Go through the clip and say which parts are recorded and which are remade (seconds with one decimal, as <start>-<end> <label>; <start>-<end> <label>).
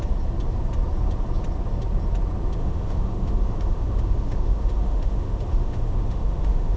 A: 0.0-2.6 recorded; 2.6-6.8 remade